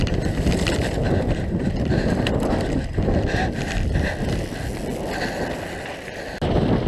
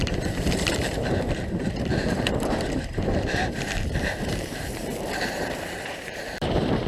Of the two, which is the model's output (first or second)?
second